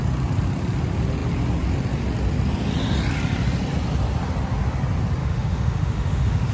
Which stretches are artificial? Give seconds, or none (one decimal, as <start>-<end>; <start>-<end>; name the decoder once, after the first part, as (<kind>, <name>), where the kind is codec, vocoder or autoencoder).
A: 5.2-6.5 (autoencoder, DAC-VAE)